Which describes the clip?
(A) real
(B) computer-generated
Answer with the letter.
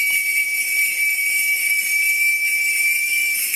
A